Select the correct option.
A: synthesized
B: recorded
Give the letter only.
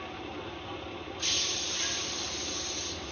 B